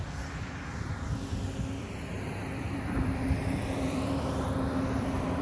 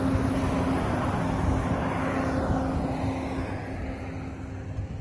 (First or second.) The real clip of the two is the second